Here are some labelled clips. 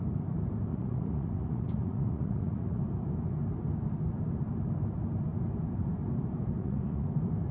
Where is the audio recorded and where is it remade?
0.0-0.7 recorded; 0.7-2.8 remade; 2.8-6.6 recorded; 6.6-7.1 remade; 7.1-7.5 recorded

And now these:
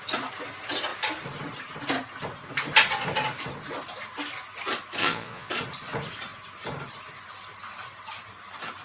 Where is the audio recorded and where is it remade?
0.0-5.0 recorded; 5.0-5.5 remade; 5.5-8.8 recorded

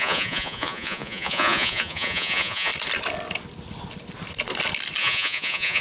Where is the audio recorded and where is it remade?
0.0-2.7 remade; 2.7-5.0 recorded; 5.0-5.8 remade

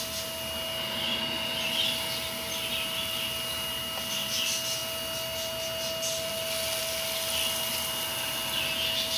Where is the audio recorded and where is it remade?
0.0-9.2 recorded

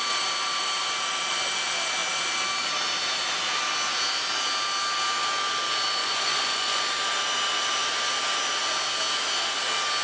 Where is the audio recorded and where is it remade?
0.0-6.0 recorded; 6.0-6.8 remade; 6.8-10.0 recorded